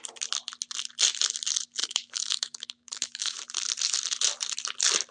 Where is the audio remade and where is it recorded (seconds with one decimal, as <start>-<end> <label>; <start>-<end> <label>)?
0.0-1.8 recorded; 1.8-3.4 remade; 3.4-5.1 recorded